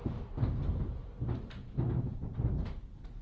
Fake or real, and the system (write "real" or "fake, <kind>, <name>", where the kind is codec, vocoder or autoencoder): real